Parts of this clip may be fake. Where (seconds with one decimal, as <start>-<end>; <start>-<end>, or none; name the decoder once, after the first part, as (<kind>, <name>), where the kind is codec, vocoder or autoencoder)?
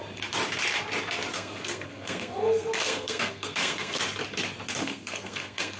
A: 1.3-4.0 (codec, SNAC); 4.8-5.8